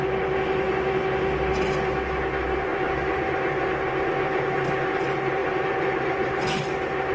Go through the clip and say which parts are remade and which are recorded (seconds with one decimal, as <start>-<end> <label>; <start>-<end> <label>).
0.0-2.7 recorded; 2.7-3.3 remade; 3.3-5.4 recorded; 5.4-6.5 remade; 6.5-7.1 recorded